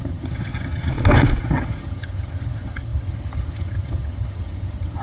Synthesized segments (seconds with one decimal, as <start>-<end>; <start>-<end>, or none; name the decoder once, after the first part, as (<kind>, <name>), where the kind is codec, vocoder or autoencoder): 0.0-0.9 (vocoder, HiFi-GAN); 1.4-5.0